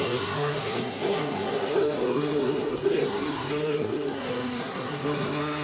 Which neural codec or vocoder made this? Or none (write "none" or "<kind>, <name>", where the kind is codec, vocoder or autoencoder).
codec, SNAC